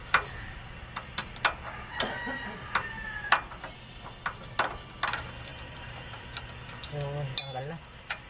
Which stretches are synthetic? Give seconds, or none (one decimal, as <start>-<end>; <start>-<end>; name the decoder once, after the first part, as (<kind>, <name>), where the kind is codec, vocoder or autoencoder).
none